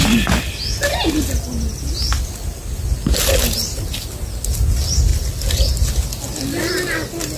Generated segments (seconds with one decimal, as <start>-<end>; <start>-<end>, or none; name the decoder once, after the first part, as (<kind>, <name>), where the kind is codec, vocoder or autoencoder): 5.1-6.1 (vocoder, BigVGAN v2)

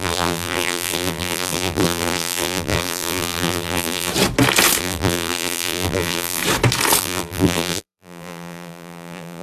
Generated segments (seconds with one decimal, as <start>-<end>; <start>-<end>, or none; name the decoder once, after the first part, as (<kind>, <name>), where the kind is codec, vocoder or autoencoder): 0.0-4.1 (vocoder, BigVGAN v2); 4.8-6.4; 7.0-9.4

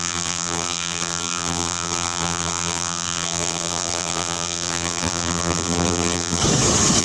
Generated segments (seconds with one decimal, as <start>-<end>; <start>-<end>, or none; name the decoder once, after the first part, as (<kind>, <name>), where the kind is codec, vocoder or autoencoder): 0.0-6.4 (vocoder, BigVGAN v2)

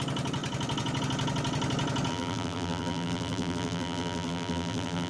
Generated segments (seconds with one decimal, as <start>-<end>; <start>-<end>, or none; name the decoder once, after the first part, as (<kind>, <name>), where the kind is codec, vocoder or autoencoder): 2.1-5.1 (vocoder, BigVGAN v2)

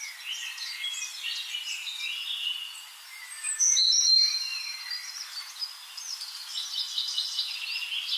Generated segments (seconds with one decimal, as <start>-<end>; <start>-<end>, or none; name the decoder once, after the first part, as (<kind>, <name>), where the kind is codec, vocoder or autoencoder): none